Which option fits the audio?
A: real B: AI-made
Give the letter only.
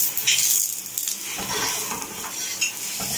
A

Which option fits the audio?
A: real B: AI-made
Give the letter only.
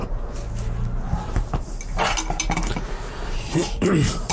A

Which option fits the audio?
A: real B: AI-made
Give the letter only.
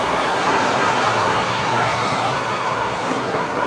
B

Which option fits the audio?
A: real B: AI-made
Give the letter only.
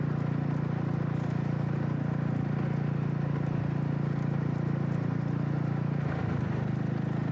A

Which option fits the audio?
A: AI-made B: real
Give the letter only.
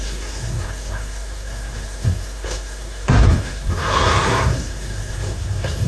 A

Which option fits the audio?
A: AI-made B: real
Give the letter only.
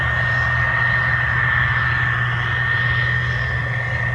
B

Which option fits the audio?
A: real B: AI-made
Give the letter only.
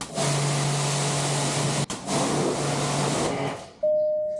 A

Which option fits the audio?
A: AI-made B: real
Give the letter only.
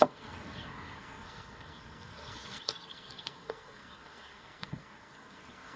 A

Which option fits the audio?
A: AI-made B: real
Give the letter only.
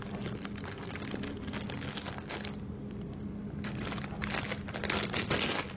B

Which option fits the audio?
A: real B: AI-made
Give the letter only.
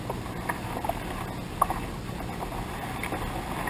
A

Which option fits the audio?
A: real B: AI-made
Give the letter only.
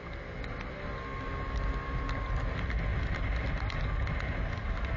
A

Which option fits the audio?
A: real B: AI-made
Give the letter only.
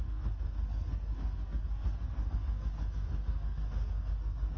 B